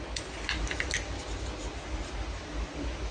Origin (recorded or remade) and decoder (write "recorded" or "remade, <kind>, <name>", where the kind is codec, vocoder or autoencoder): recorded